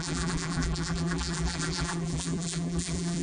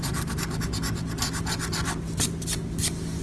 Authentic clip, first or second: second